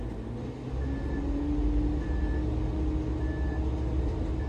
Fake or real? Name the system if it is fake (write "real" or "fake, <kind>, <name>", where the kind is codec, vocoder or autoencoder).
real